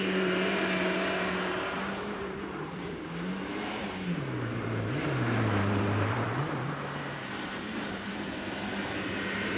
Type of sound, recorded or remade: remade